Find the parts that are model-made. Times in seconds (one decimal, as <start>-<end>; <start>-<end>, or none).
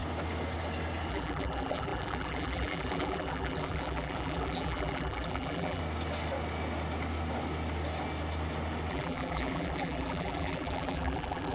1.1-5.8; 8.9-11.5